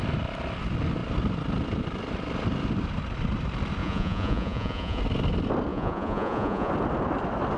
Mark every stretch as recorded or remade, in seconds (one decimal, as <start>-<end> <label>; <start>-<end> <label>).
0.0-3.8 recorded; 3.8-5.0 remade; 5.0-5.7 recorded; 5.7-6.7 remade; 6.7-7.6 recorded